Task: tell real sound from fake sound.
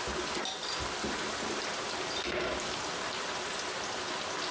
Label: real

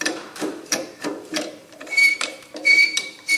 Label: fake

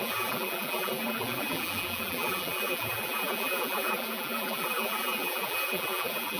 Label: fake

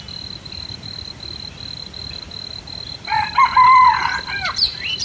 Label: fake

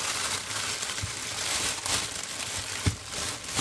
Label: real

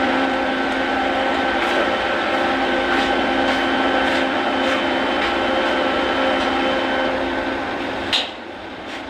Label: real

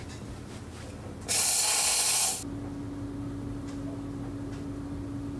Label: real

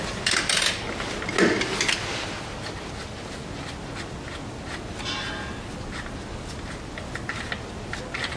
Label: real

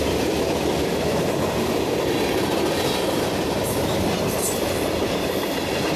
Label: real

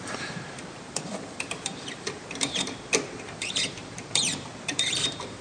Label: fake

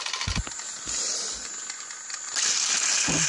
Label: real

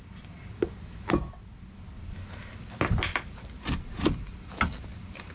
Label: fake